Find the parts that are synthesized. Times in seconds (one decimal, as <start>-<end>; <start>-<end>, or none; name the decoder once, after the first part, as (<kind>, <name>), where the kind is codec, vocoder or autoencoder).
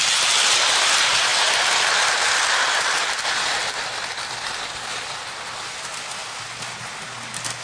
none